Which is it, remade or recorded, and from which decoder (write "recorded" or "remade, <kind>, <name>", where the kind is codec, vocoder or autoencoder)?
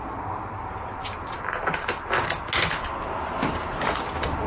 recorded